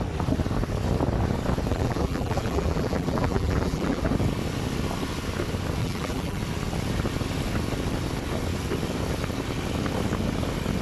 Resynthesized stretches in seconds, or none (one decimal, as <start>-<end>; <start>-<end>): 1.7-4.0; 5.8-6.4